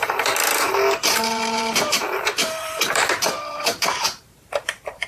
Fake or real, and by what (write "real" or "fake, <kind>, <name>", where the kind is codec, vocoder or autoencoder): fake, vocoder, BigVGAN v2